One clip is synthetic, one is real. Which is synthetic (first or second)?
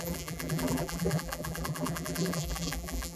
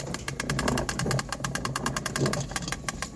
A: first